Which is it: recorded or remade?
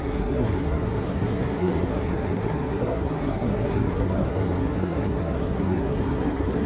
remade